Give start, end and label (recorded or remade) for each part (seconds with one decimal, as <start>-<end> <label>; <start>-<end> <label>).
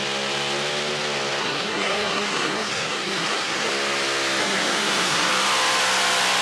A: 0.0-1.4 recorded; 1.4-3.7 remade; 3.7-4.4 recorded; 4.4-5.3 remade; 5.3-6.4 recorded